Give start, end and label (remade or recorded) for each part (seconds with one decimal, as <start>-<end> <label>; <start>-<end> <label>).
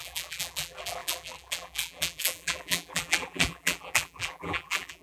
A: 0.0-5.0 remade